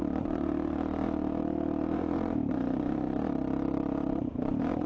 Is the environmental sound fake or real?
fake